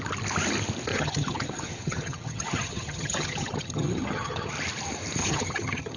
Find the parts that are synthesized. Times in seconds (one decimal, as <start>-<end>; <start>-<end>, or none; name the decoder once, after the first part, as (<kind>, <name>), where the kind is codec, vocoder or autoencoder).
0.9-4.5 (vocoder, HiFi-GAN); 5.2-6.0